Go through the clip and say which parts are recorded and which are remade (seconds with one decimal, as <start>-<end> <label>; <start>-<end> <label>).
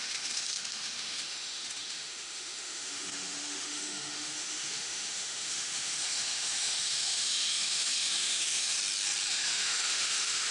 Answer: 0.0-8.8 remade; 8.8-9.3 recorded; 9.3-10.5 remade